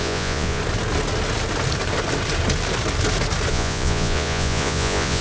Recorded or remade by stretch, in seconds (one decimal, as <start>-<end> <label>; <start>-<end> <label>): 0.0-0.6 remade; 0.6-3.5 recorded; 3.5-5.2 remade